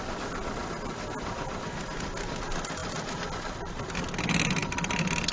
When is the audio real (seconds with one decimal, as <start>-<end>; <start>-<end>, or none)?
0.0-0.6; 1.6-2.8